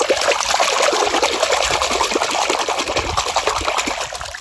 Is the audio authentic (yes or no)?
yes